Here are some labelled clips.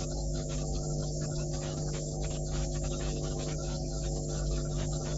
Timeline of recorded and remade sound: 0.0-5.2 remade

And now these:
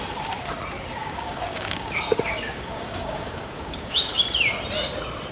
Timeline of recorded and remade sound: 0.0-1.0 recorded; 1.0-4.2 remade; 4.2-5.3 recorded

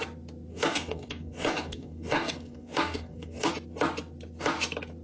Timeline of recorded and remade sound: 0.0-0.5 recorded; 0.5-3.5 remade; 3.5-5.0 recorded

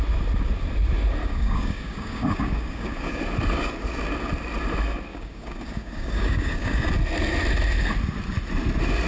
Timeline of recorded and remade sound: 0.0-1.2 recorded; 1.2-3.2 remade; 3.2-5.1 recorded; 5.1-6.9 remade; 6.9-9.1 recorded

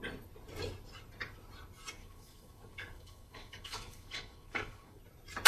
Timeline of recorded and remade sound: 0.0-2.0 recorded; 2.0-5.0 remade; 5.0-5.5 recorded

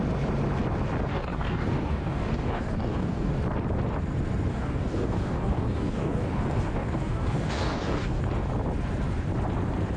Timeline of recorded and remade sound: 0.0-1.1 recorded; 1.1-3.3 remade; 3.3-4.5 recorded; 4.5-8.2 remade; 8.2-10.0 recorded